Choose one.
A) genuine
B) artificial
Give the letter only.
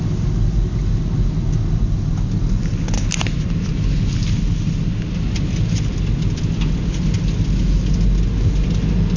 A